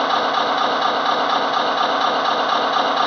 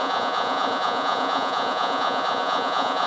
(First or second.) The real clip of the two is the first